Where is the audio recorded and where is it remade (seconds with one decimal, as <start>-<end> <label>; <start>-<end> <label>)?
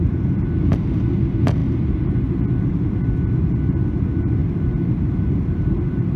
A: 0.0-4.4 recorded; 4.4-6.2 remade